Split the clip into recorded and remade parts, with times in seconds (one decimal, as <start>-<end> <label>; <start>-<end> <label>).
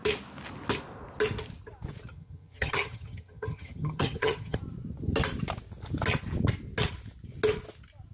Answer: 0.0-2.1 recorded; 2.1-4.6 remade; 4.6-8.1 recorded